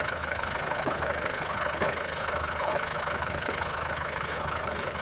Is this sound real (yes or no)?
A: no